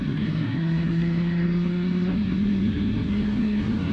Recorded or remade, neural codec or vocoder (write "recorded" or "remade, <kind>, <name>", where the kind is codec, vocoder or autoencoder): remade, codec, SNAC